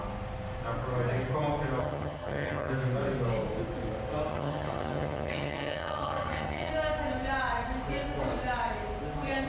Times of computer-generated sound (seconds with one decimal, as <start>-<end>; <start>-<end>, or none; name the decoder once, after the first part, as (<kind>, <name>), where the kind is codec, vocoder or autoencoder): 1.8-2.7 (vocoder, HiFi-GAN); 4.3-6.7